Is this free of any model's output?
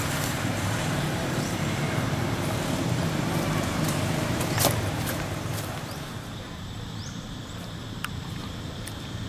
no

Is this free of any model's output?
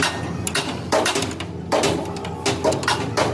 yes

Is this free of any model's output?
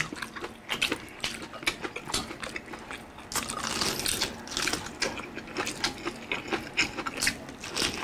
yes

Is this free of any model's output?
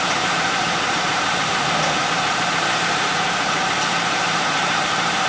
no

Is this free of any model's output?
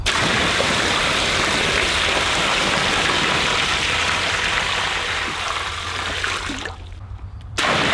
no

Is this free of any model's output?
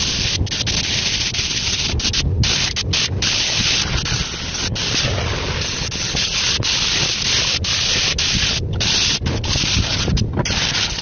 yes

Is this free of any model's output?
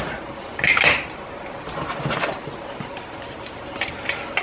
yes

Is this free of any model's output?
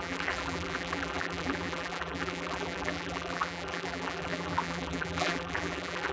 no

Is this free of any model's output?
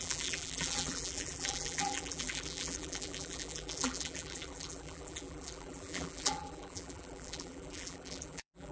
no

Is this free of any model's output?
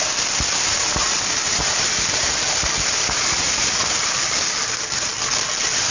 yes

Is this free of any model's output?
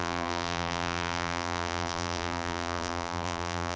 no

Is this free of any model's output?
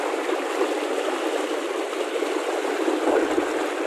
yes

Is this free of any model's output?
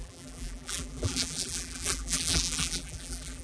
no